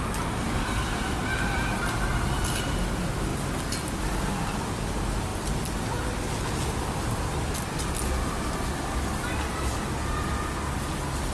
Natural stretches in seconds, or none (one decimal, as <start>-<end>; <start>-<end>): 0.0-11.3